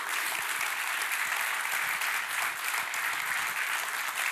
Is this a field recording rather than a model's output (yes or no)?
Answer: yes